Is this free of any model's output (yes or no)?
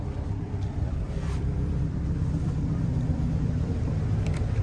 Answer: no